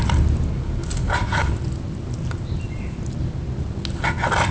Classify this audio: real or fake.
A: real